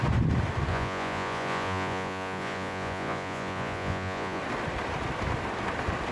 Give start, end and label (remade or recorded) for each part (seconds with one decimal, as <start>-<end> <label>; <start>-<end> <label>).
0.0-0.7 recorded; 0.7-4.4 remade; 4.4-6.1 recorded